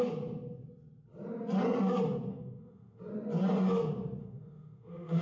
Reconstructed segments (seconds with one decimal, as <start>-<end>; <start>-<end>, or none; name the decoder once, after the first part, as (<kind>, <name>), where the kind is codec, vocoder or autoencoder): 2.3-3.0 (autoencoder, DAC-VAE); 4.2-5.2